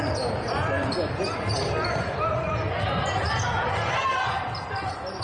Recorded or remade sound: recorded